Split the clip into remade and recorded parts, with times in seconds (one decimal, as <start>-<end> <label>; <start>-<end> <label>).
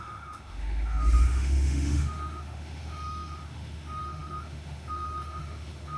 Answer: 0.0-6.0 remade